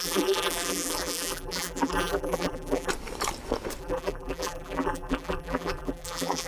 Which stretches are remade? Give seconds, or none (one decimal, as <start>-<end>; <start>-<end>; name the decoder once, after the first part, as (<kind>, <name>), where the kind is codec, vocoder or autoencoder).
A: 0.0-2.9 (vocoder, BigVGAN v2); 3.8-6.5